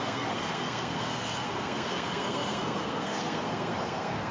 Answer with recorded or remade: remade